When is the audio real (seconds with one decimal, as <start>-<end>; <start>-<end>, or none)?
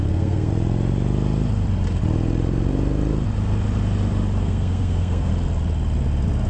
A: 0.5-4.4; 5.3-6.5